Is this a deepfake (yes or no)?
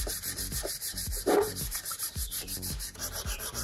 yes